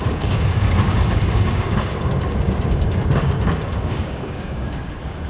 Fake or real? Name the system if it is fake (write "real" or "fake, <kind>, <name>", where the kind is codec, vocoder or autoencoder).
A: fake, codec, DAC